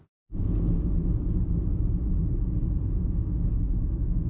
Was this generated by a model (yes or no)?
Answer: yes